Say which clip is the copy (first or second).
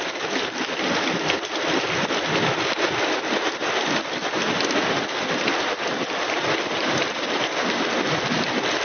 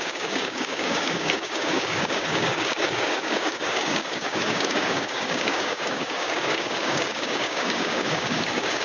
second